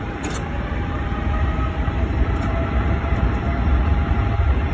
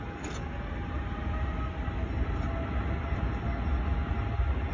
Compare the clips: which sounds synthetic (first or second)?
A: first